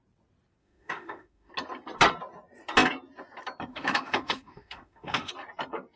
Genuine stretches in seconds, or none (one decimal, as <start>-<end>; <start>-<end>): 0.0-0.6; 1.5-3.7; 5.3-6.0